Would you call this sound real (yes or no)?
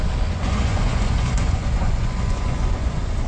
no